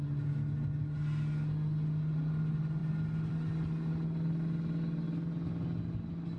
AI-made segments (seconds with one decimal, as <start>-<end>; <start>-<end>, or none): none